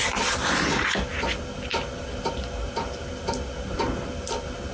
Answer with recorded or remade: recorded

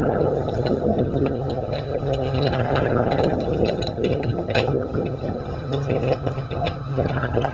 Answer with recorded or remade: remade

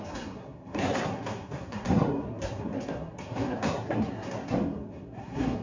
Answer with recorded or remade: remade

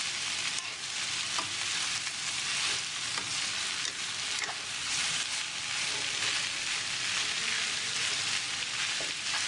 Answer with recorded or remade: recorded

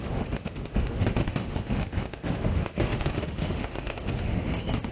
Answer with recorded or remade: remade